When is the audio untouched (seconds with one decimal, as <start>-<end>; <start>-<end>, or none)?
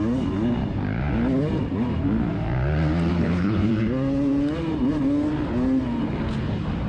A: 0.0-3.1; 3.7-6.9